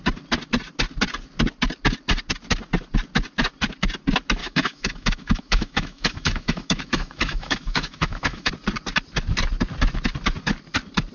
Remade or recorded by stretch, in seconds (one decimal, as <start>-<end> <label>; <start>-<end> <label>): 0.0-4.4 recorded; 4.4-8.5 remade; 8.5-11.1 recorded